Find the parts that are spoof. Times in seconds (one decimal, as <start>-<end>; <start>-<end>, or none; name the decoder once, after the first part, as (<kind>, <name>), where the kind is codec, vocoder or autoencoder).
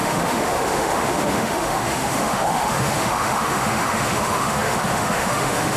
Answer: 0.0-5.8 (autoencoder, DAC-VAE)